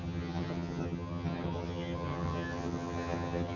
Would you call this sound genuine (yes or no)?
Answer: no